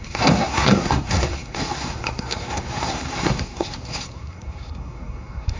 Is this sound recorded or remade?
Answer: remade